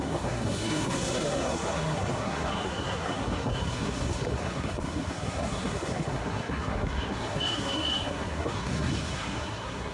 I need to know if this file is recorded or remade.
remade